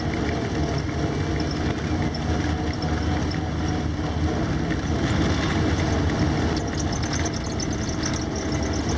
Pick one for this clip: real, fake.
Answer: real